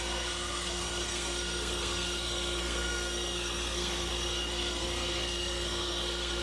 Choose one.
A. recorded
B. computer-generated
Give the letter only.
B